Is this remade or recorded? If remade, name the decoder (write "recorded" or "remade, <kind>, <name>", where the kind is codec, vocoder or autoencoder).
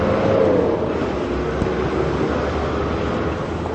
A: recorded